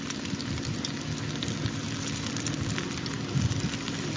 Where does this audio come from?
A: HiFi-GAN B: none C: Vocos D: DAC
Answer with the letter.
B